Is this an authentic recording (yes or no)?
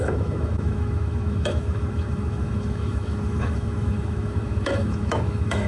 no